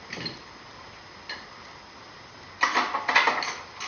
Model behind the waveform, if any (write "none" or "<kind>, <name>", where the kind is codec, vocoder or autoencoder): none